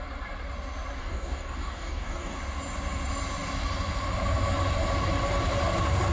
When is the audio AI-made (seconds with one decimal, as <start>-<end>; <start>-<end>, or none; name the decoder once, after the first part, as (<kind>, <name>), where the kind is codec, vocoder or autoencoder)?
1.0-2.4 (codec, DAC)